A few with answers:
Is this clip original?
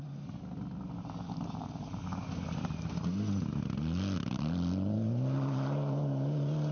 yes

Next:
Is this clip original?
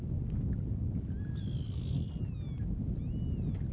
yes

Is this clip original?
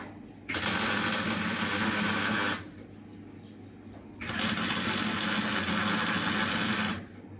yes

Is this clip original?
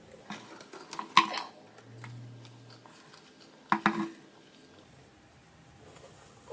yes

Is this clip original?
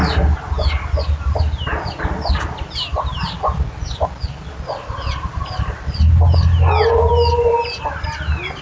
yes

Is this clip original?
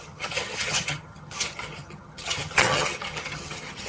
no